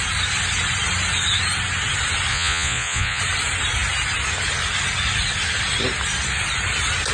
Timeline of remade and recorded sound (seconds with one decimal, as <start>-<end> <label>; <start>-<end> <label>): 0.0-2.3 recorded; 2.3-3.2 remade; 3.2-7.1 recorded